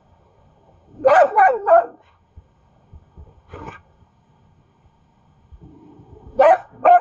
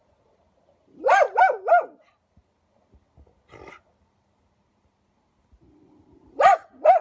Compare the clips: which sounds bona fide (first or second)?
second